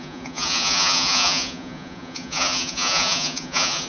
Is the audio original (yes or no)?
no